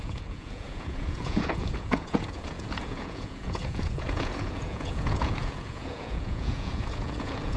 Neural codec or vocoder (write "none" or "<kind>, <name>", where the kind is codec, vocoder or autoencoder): vocoder, Vocos